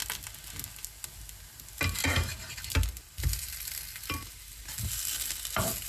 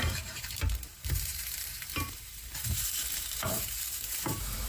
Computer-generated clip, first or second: second